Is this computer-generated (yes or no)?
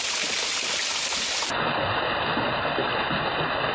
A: no